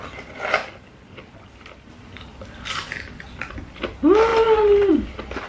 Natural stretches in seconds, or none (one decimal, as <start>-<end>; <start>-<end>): none